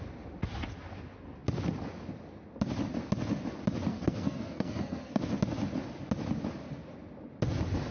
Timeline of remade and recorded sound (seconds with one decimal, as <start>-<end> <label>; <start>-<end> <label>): 0.0-3.9 recorded; 3.9-5.2 remade; 5.2-7.9 recorded